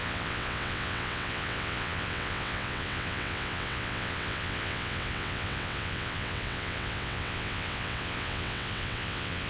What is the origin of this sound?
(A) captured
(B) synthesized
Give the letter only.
B